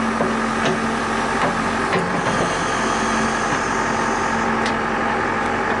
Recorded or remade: recorded